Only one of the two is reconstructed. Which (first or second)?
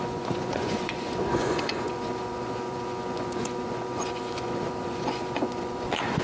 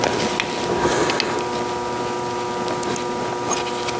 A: first